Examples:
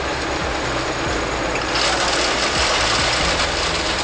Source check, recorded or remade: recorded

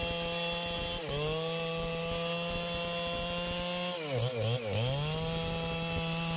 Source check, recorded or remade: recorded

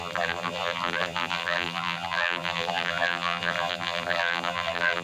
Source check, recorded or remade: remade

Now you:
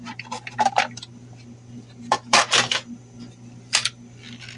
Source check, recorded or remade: remade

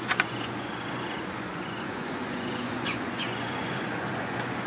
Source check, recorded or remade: remade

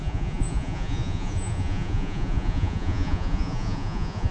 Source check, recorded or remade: remade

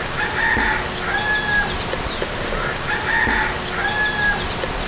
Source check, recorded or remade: recorded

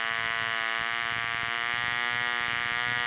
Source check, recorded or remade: remade